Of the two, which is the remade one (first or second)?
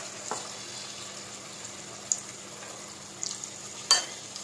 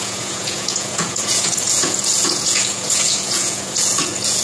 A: second